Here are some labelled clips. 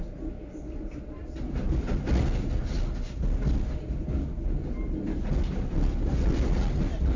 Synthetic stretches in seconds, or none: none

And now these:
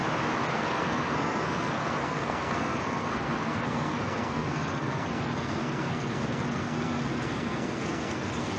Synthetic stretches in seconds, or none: 0.5-8.6

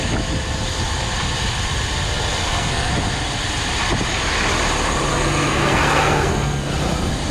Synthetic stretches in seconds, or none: 2.4-2.9; 5.1-6.7

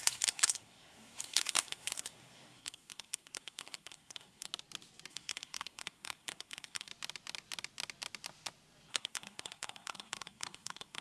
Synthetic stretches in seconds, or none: 0.0-4.5; 5.1-6.9; 8.9-11.0

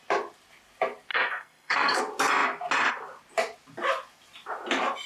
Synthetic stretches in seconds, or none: 1.1-2.0